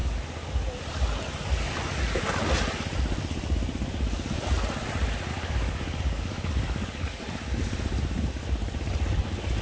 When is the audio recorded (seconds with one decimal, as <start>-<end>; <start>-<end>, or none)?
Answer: 0.0-5.3; 7.2-9.6